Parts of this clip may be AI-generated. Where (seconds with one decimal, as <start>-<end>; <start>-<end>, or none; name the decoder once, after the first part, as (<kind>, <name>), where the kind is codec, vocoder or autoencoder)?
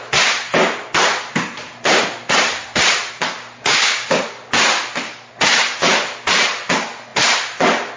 3.6-4.2 (codec, DAC)